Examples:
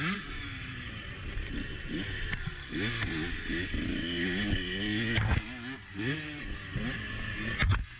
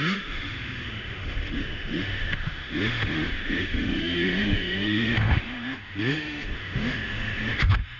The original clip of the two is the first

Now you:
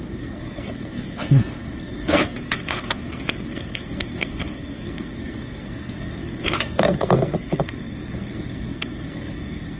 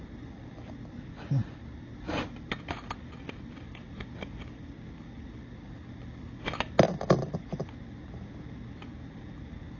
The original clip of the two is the second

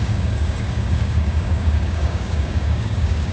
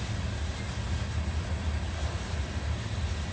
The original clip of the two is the second